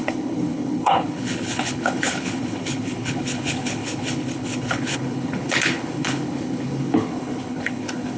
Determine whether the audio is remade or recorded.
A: remade